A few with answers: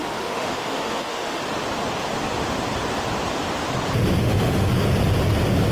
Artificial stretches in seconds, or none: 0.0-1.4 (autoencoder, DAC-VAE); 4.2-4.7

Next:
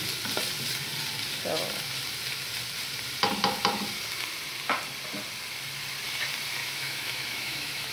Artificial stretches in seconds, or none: 6.6-7.9 (autoencoder, DAC-VAE)

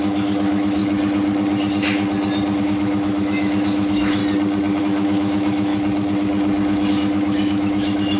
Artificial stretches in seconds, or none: 0.0-0.8 (autoencoder, DAC-VAE); 2.6-4.2; 4.8-5.7; 6.9-8.2

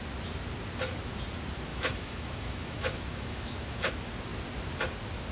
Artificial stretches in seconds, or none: 1.7-3.9 (autoencoder, DAC-VAE)

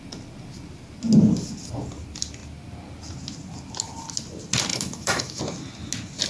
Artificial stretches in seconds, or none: 4.7-5.4 (autoencoder, DAC-VAE)

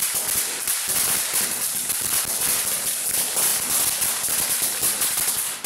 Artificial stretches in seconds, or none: none